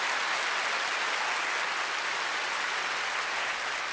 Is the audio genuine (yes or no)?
yes